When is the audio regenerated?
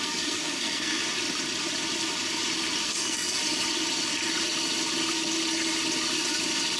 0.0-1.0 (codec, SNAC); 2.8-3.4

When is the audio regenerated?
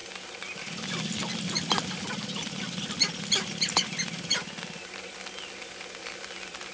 none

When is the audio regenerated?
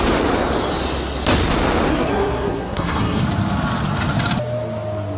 1.9-3.2 (codec, SNAC)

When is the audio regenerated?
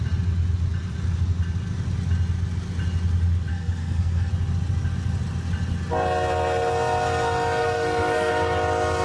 3.5-4.3 (codec, SNAC); 7.6-8.3